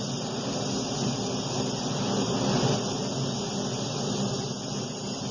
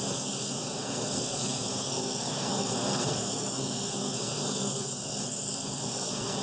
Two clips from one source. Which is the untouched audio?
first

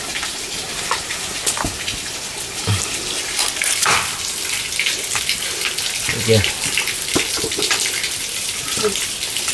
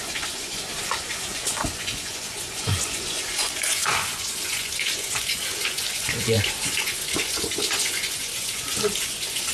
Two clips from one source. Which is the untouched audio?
first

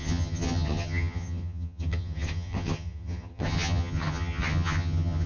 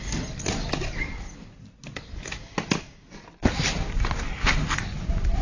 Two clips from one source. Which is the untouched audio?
second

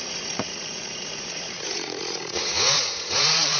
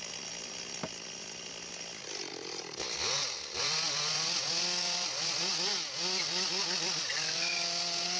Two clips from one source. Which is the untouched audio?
second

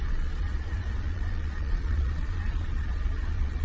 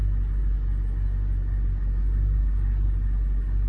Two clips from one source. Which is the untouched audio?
second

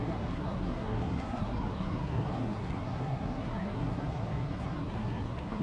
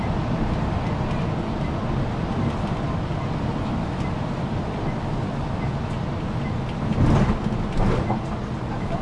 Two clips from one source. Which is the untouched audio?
second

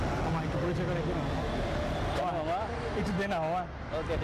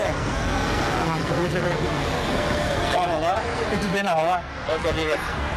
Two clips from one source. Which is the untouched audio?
first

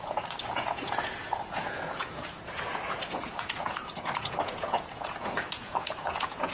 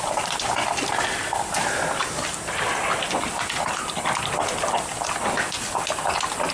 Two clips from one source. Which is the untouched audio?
second